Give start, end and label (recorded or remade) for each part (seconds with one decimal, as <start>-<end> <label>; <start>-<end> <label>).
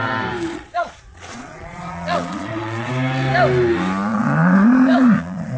0.0-0.5 recorded; 0.5-2.9 remade; 2.9-4.1 recorded; 4.1-5.6 remade